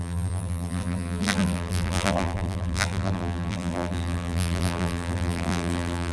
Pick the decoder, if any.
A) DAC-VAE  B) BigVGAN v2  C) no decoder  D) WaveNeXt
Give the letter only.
B